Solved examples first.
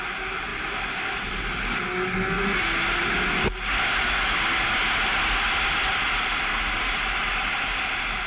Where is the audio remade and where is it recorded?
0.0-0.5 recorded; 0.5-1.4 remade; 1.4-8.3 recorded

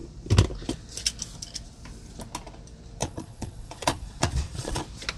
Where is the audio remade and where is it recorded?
0.0-3.0 recorded; 3.0-4.8 remade; 4.8-5.2 recorded

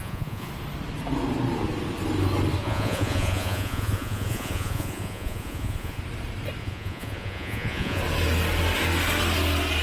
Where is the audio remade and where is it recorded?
0.0-0.5 remade; 0.5-2.6 recorded; 2.6-6.0 remade; 6.0-6.6 recorded; 6.6-8.0 remade; 8.0-9.8 recorded

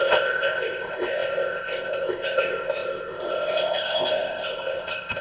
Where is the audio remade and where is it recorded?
0.0-5.2 remade

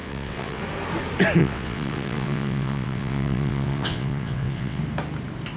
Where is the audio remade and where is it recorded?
0.0-0.6 remade; 0.6-1.4 recorded; 1.4-4.8 remade; 4.8-5.6 recorded